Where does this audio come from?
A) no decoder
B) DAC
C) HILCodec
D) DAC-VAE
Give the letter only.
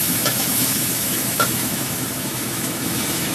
D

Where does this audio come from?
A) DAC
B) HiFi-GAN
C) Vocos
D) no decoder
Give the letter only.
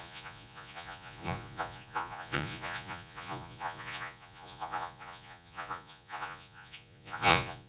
C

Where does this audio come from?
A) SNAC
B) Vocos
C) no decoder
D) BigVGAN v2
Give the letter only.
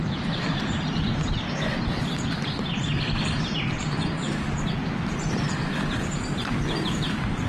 C